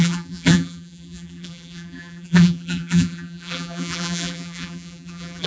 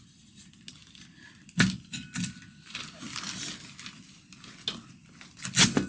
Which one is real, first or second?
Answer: second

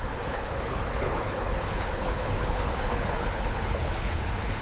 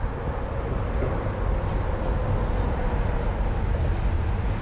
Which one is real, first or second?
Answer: second